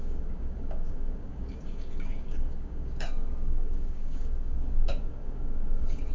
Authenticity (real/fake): fake